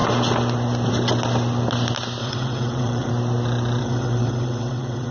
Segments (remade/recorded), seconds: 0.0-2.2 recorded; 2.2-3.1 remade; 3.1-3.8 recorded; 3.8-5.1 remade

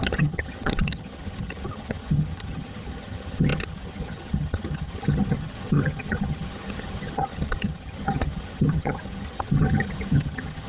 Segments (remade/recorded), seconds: 0.0-10.7 remade

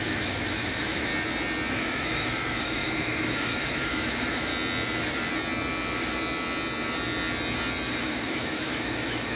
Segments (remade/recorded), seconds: 0.0-1.1 remade; 1.1-1.7 recorded; 1.7-4.5 remade; 4.5-8.0 recorded; 8.0-9.4 remade